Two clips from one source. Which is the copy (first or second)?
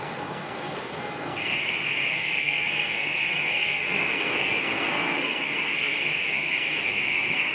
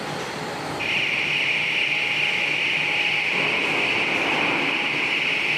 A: first